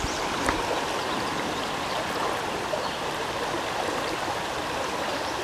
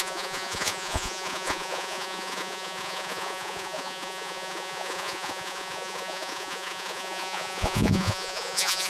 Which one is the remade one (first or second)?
second